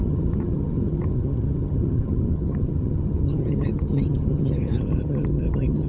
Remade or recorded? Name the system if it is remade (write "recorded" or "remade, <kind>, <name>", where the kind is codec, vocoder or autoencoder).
remade, vocoder, HiFi-GAN